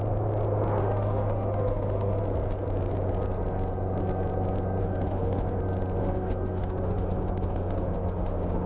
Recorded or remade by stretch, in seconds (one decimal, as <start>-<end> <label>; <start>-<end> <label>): 0.0-0.8 recorded; 0.8-2.2 remade; 2.2-4.8 recorded; 4.8-5.6 remade; 5.6-6.0 recorded; 6.0-8.7 remade